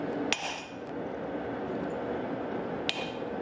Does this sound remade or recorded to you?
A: recorded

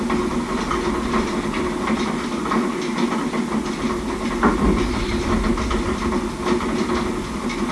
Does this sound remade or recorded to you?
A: recorded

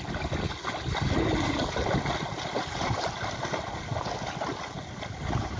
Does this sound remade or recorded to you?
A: recorded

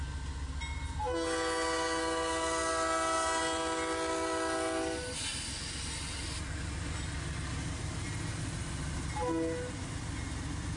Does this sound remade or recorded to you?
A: recorded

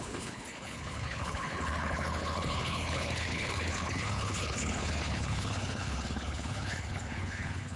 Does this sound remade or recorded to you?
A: remade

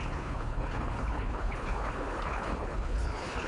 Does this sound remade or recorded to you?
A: remade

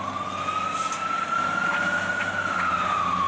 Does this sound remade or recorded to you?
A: recorded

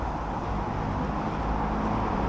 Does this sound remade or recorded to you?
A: recorded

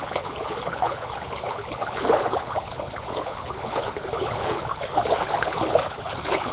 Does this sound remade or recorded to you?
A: remade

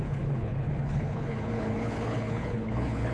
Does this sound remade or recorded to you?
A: remade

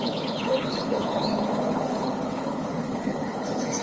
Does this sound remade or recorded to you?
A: remade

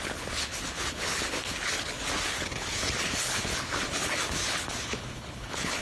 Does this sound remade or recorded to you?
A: remade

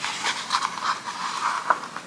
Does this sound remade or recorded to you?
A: recorded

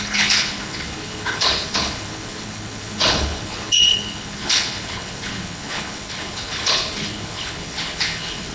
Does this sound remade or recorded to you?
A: remade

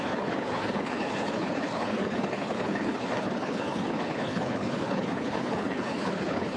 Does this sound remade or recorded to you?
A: remade